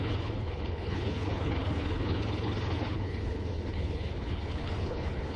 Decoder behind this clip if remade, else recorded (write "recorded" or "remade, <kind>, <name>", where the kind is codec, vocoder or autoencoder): remade, codec, HILCodec